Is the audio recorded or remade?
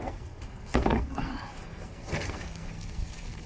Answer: remade